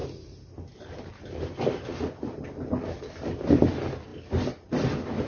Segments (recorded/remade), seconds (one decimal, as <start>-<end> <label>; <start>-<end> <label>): 0.0-5.3 recorded